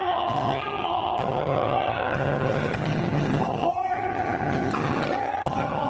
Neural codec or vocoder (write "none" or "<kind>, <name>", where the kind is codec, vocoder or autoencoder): vocoder, HiFi-GAN